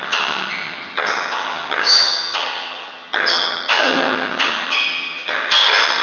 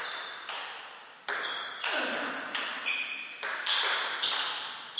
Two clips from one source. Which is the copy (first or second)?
first